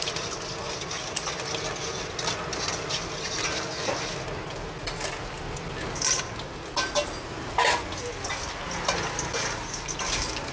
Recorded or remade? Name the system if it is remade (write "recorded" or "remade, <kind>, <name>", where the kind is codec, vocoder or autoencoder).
recorded